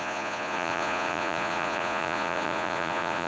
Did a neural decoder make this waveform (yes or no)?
yes